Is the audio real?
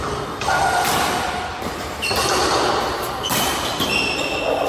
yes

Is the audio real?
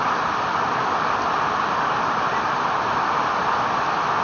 yes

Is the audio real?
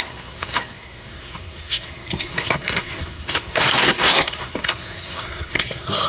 no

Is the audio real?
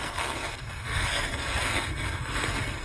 no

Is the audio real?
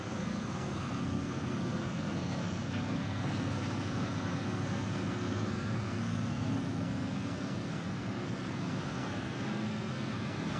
no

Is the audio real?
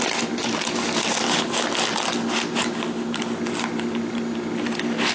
yes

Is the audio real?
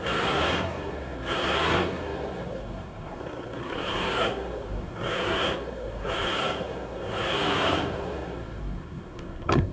no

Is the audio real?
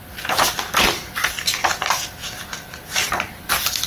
yes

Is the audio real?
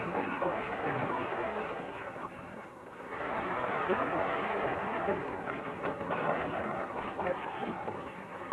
no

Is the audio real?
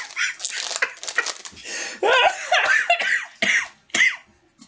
yes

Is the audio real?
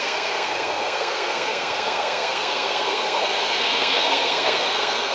no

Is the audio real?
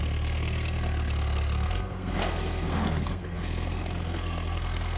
no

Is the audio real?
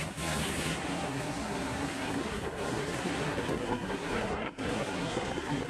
no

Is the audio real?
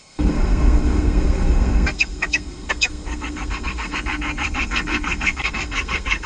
no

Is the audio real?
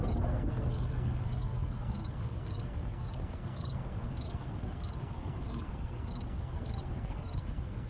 no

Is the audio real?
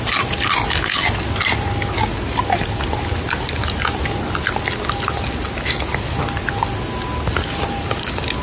yes